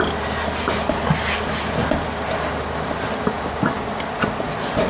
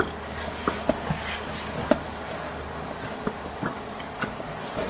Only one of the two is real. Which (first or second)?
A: first